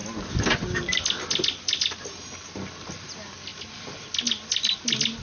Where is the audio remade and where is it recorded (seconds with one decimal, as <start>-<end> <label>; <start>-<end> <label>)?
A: 0.0-5.2 recorded